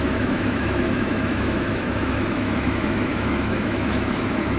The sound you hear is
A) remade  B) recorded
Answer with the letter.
A